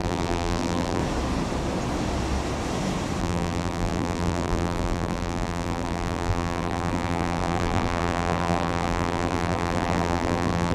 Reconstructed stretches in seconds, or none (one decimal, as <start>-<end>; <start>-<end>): 0.0-1.0; 3.2-10.7